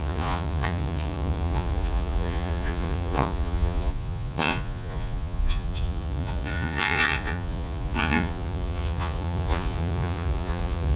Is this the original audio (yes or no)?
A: no